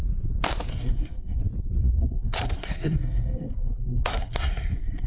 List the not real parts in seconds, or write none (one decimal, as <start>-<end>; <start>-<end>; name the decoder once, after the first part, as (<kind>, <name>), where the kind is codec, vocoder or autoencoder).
0.7-1.4 (codec, SNAC); 1.8-5.1